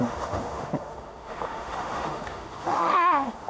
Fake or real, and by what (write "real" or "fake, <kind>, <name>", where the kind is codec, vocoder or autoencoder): fake, autoencoder, DAC-VAE